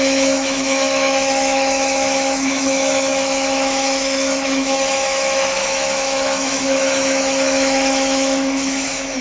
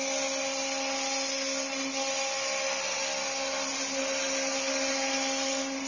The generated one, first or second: first